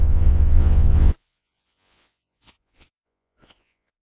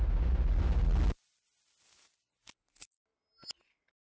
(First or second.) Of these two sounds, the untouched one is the second